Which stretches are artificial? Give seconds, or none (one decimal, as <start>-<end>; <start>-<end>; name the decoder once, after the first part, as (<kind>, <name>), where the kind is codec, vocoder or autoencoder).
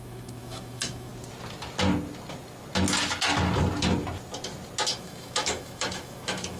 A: 0.0-1.1 (autoencoder, DAC-VAE); 4.9-6.6